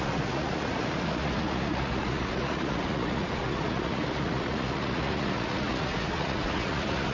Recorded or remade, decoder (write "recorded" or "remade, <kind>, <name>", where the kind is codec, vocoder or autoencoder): remade, vocoder, Vocos